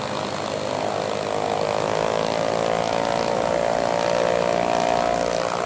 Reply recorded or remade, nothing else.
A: recorded